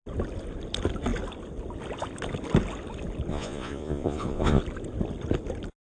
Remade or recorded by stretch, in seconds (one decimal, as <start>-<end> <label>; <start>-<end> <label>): 0.0-3.3 recorded; 3.3-4.6 remade; 4.6-5.8 recorded